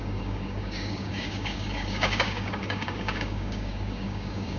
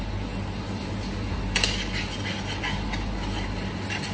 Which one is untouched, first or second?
second